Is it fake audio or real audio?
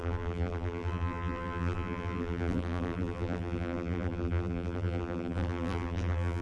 fake